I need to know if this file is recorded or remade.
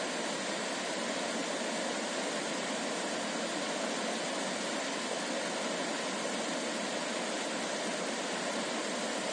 recorded